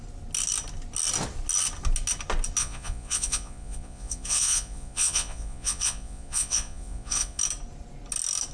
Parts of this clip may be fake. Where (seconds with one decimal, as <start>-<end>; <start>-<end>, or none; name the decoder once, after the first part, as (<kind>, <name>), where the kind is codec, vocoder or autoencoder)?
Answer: 2.6-7.4 (vocoder, Vocos)